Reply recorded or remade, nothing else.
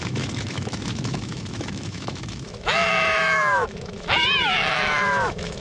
remade